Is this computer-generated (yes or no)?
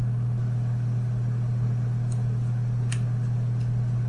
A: no